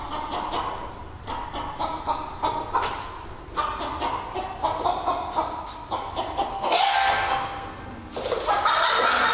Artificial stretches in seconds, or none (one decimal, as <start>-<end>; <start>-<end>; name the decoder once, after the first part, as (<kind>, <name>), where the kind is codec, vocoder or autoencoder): 6.5-7.8 (codec, SNAC)